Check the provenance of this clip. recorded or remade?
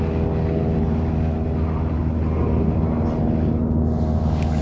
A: recorded